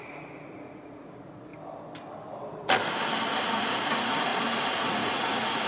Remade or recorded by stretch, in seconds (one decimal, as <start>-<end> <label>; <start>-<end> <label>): 0.0-1.5 remade; 1.5-3.5 recorded; 3.5-5.7 remade